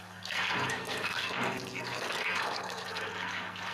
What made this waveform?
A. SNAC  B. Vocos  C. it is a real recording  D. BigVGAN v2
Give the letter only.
A